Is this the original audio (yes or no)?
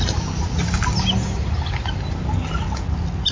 yes